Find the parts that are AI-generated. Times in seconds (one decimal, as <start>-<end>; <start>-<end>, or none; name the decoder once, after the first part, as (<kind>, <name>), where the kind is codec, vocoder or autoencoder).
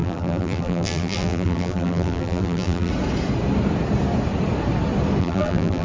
0.0-2.9 (vocoder, BigVGAN v2); 5.2-5.8